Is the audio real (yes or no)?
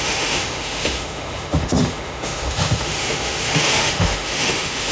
no